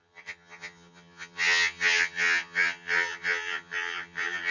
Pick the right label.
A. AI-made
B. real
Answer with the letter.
A